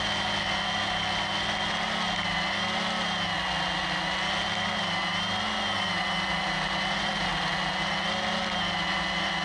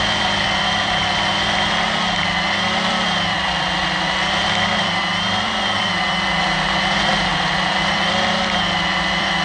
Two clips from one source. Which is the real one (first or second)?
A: first